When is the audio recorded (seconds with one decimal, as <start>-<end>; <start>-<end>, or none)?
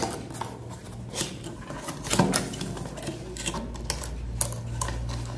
0.0-5.4